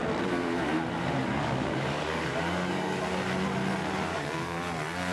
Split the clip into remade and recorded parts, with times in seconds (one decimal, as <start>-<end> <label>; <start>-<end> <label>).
0.0-1.2 recorded; 1.2-3.0 remade; 3.0-4.1 recorded; 4.1-4.6 remade; 4.6-5.1 recorded